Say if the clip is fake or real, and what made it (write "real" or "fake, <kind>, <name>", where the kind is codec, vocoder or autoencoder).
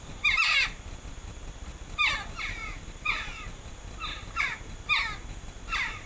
real